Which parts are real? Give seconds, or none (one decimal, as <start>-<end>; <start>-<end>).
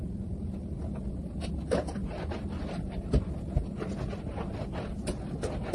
2.0-5.7